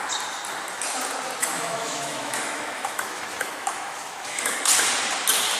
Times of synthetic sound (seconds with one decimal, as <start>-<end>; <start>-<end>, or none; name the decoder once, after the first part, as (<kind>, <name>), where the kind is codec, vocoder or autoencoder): 1.4-4.6 (autoencoder, DAC-VAE)